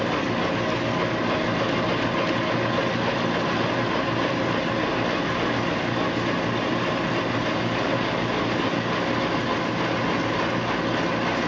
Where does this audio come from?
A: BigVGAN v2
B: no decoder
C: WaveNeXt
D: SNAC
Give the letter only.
B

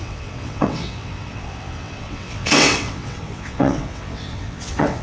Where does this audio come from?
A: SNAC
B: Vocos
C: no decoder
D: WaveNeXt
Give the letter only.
D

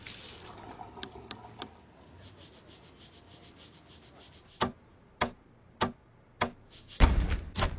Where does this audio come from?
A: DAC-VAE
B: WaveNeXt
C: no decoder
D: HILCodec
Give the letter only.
C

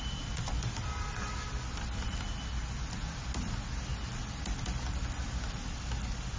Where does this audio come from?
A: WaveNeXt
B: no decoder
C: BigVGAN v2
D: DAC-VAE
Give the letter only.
B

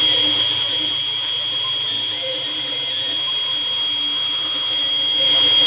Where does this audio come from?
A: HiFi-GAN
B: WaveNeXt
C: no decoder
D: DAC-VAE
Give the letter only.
C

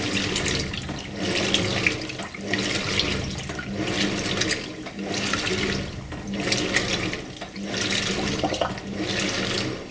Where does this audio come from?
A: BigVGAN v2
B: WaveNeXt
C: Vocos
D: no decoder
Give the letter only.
D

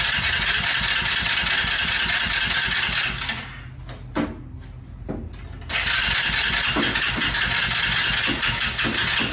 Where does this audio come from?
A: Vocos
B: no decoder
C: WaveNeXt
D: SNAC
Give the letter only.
B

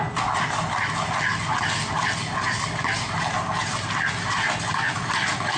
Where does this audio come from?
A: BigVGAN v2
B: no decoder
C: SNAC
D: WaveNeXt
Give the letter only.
B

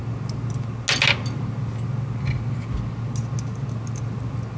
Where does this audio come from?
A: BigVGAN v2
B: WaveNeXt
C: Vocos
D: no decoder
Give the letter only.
D